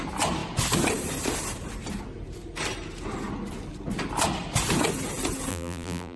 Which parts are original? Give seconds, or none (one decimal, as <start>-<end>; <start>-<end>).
0.0-5.5